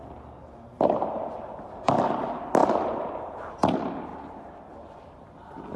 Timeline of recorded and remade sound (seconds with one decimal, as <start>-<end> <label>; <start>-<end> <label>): 0.0-5.8 recorded